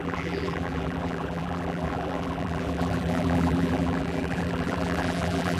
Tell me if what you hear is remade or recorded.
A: remade